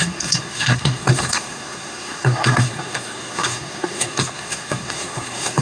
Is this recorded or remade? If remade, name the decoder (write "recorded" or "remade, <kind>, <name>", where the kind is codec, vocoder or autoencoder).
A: remade, codec, SNAC